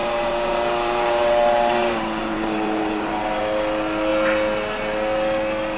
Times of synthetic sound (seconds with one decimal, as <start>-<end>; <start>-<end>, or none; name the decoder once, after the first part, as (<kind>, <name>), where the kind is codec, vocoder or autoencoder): 0.0-3.4 (vocoder, BigVGAN v2)